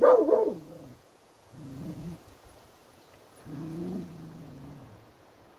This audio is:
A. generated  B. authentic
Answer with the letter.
A